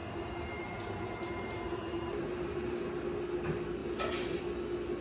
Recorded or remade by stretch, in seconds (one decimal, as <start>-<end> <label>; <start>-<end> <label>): 0.0-3.0 remade; 3.0-3.8 recorded; 3.8-4.4 remade; 4.4-5.0 recorded